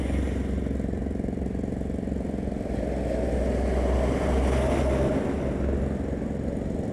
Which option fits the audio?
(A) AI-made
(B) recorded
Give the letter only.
B